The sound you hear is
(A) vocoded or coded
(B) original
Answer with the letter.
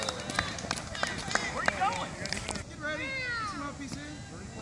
B